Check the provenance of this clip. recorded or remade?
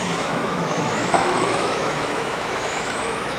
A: remade